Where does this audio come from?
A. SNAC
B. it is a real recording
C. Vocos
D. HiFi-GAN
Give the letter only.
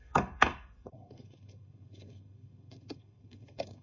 A